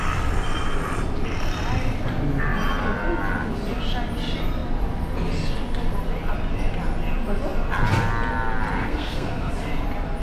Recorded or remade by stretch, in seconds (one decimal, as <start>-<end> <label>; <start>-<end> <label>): 0.0-8.8 recorded; 8.8-9.5 remade; 9.5-10.2 recorded